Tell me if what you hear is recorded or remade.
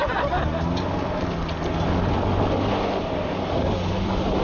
recorded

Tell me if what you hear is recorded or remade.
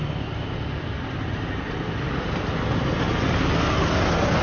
recorded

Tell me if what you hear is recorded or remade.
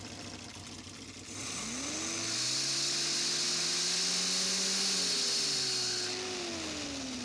recorded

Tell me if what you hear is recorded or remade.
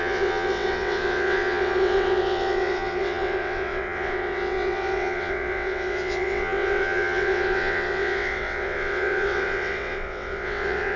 remade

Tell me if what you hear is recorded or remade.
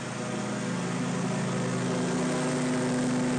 recorded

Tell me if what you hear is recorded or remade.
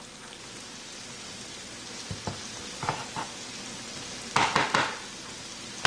recorded